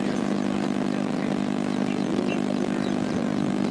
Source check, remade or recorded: recorded